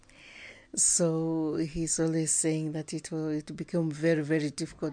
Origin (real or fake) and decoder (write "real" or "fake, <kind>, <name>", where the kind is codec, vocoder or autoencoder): real